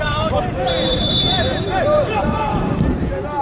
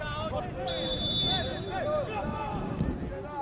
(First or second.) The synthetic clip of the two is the first